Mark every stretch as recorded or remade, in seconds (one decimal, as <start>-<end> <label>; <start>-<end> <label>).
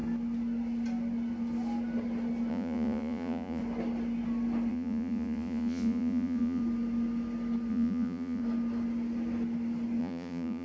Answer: 0.0-2.5 recorded; 2.5-3.6 remade; 3.6-4.7 recorded; 4.7-6.6 remade; 6.6-7.7 recorded; 7.7-8.4 remade; 8.4-10.0 recorded; 10.0-10.6 remade